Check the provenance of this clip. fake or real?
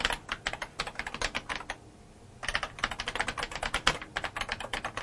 real